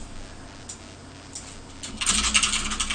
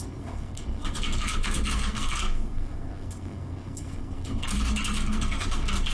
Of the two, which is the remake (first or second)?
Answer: second